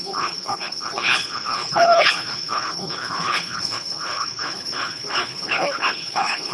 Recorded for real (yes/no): no